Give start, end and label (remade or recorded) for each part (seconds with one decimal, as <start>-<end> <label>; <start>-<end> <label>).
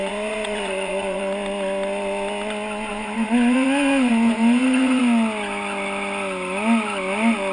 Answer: 0.0-1.2 remade; 1.2-2.9 recorded; 2.9-5.0 remade; 5.0-7.5 recorded